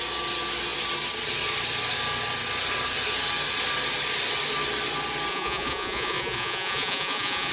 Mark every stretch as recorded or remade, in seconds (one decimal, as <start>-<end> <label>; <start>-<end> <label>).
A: 0.0-5.3 recorded; 5.3-7.5 remade